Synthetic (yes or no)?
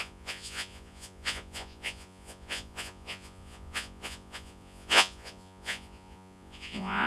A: yes